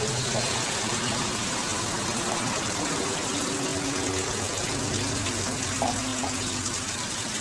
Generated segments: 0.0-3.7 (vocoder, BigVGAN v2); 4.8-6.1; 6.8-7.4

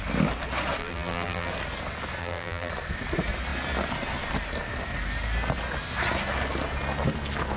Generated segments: 0.8-1.5 (vocoder, BigVGAN v2); 2.2-2.7

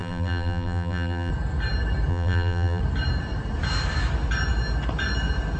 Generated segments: 0.0-1.3 (vocoder, BigVGAN v2); 2.1-2.8